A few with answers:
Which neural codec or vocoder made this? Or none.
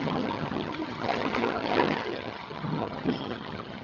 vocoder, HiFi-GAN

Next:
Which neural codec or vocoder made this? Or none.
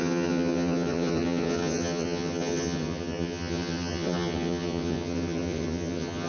vocoder, HiFi-GAN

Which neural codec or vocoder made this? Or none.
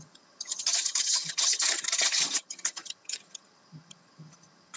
vocoder, HiFi-GAN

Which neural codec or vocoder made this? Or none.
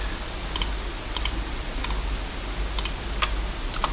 none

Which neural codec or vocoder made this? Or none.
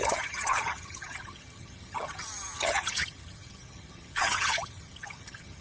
vocoder, HiFi-GAN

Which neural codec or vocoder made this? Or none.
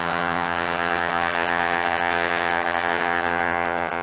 vocoder, HiFi-GAN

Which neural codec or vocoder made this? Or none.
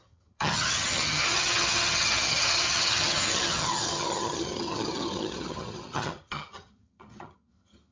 vocoder, HiFi-GAN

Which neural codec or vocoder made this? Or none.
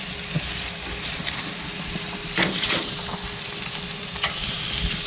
none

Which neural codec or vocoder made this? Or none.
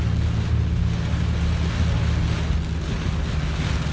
none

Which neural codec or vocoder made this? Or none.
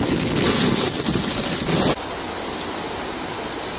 none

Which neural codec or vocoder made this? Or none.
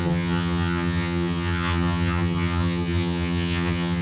vocoder, HiFi-GAN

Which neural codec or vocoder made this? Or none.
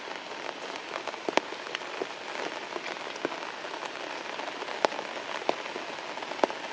none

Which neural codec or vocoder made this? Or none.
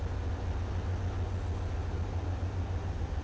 none